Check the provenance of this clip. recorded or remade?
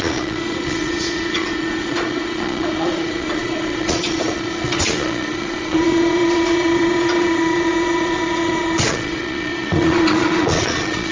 remade